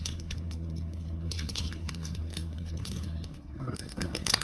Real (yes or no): no